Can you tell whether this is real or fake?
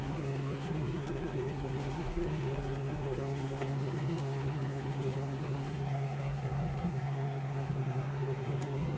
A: fake